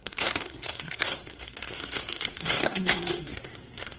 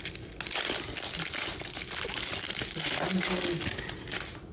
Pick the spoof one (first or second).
first